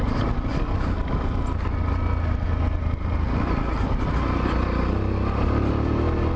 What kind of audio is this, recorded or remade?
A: recorded